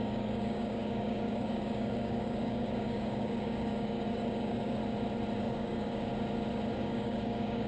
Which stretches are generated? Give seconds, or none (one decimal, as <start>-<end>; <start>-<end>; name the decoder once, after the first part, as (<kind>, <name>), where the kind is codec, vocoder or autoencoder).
0.0-4.8 (codec, DAC); 5.4-6.1; 6.7-7.7